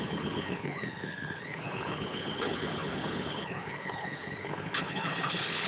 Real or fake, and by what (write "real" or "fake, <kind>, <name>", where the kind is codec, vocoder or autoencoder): fake, codec, HILCodec